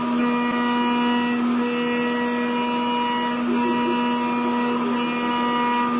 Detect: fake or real real